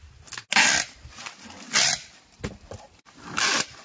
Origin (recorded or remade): recorded